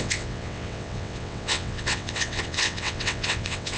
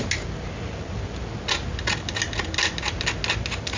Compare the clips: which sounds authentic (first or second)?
second